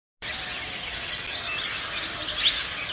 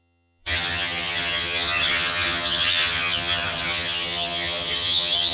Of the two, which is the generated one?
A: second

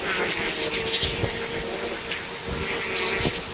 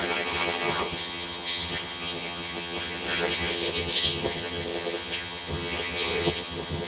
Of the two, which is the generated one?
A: second